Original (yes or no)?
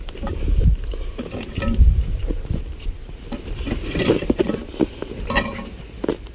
no